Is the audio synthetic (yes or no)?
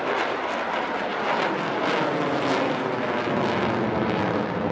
no